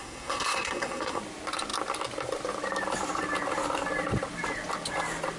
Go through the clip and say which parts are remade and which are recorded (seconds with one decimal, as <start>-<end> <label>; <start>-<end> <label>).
0.0-1.2 remade; 1.2-5.4 recorded